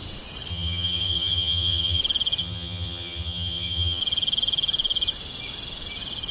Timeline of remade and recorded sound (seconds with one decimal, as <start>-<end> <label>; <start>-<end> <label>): 0.0-0.5 recorded; 0.5-2.0 remade; 2.0-2.4 recorded; 2.4-4.0 remade; 4.0-6.3 recorded